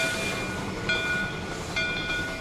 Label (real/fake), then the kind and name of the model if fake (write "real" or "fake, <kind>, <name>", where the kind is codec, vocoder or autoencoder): real